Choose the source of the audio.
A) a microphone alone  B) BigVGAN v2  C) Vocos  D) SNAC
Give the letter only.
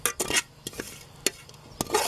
A